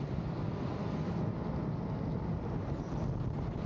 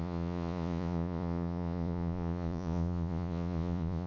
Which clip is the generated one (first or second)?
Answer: second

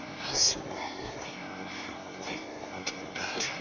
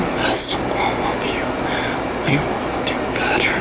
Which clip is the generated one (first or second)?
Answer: first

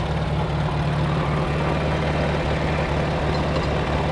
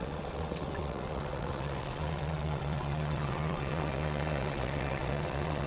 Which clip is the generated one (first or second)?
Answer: second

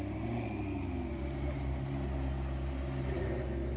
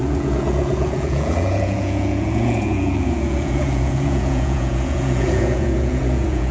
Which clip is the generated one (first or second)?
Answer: second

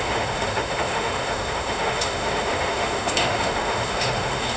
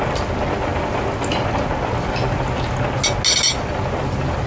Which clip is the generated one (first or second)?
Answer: first